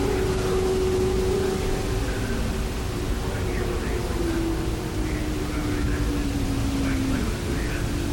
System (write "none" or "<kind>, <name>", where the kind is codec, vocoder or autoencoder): none